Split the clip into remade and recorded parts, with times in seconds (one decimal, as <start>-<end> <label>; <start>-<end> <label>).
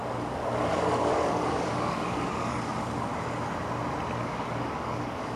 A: 0.0-3.1 remade; 3.1-4.2 recorded; 4.2-5.4 remade